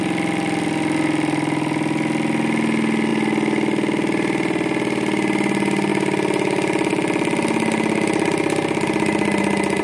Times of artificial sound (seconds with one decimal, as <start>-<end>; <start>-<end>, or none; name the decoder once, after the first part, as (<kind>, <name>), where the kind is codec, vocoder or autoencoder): none